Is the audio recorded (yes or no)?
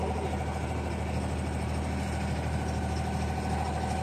yes